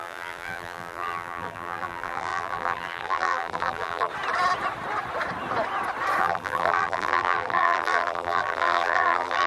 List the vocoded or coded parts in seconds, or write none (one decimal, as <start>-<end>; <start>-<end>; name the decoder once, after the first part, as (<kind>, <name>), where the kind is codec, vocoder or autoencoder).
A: 0.0-4.1 (vocoder, BigVGAN v2); 6.2-9.5